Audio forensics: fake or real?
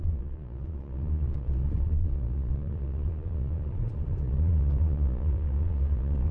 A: fake